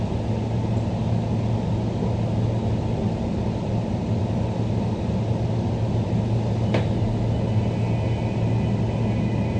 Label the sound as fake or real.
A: real